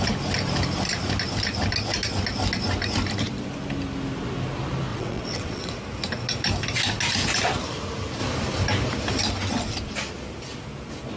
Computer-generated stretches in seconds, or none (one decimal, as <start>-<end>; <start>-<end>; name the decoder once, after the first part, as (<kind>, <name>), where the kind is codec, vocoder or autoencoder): 4.9-5.7 (vocoder, WaveNeXt)